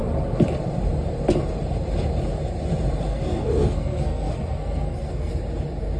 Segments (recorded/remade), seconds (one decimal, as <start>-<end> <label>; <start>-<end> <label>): 0.0-3.1 recorded; 3.1-5.3 remade; 5.3-6.0 recorded

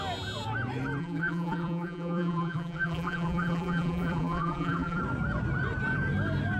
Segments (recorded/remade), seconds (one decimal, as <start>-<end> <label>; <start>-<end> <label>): 0.0-1.0 recorded; 1.0-5.0 remade; 5.0-6.6 recorded

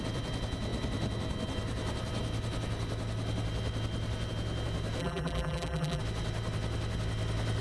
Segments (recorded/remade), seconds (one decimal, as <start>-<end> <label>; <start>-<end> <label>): 0.0-5.0 recorded; 5.0-6.0 remade; 6.0-7.6 recorded

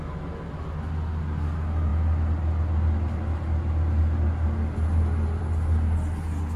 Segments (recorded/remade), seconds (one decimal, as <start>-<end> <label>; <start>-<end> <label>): 0.0-6.6 recorded

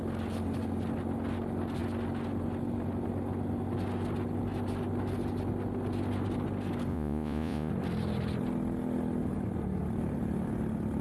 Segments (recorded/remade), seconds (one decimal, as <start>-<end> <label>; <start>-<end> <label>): 0.0-6.9 recorded; 6.9-7.7 remade; 7.7-11.0 recorded

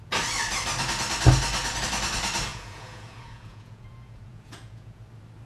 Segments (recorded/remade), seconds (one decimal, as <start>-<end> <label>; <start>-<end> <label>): 0.0-2.5 recorded; 2.5-5.0 remade; 5.0-5.5 recorded

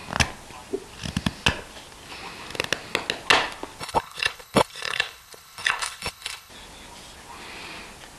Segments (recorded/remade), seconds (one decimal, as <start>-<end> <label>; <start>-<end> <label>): 0.0-3.8 recorded; 3.8-6.5 remade; 6.5-8.2 recorded